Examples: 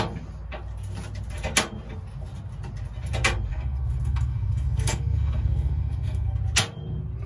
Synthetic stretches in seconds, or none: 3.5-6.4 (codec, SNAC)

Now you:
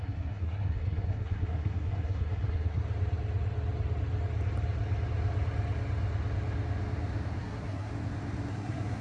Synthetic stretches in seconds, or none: 0.0-2.8 (codec, SNAC); 7.4-7.9; 8.5-9.0

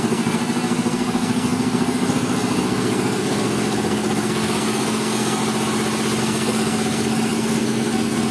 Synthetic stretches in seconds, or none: 0.0-5.4 (codec, SNAC); 6.2-8.3

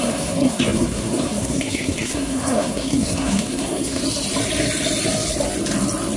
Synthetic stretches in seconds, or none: 0.0-4.0 (codec, SNAC)